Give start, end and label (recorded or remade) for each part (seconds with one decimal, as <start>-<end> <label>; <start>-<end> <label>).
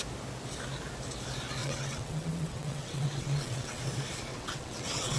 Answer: 0.0-1.6 recorded; 1.6-3.8 remade; 3.8-4.3 recorded; 4.3-5.2 remade